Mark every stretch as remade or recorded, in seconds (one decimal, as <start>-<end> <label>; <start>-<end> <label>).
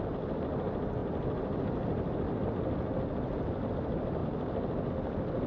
0.0-5.5 recorded